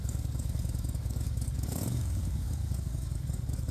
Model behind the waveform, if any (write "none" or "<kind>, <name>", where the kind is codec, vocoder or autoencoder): codec, DAC